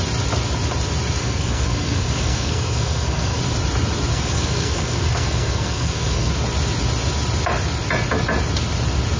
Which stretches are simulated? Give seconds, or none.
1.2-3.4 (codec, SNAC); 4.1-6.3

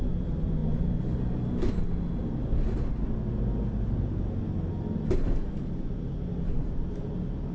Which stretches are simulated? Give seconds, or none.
none

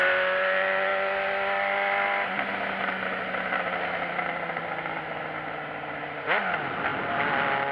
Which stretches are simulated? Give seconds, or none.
none

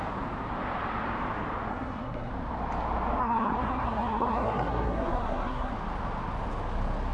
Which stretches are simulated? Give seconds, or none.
1.7-2.3 (codec, SNAC); 3.2-5.7

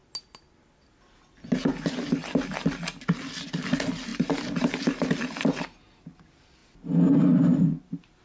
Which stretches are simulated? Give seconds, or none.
none

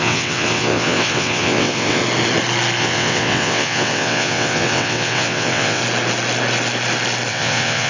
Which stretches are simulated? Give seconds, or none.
0.0-2.0 (vocoder, WaveNeXt); 2.8-5.8; 7.3-7.9